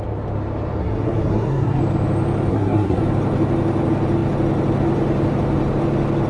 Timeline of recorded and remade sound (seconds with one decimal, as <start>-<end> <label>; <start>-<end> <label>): 0.0-0.8 recorded; 0.8-1.8 remade; 1.8-2.5 recorded; 2.5-3.0 remade; 3.0-6.3 recorded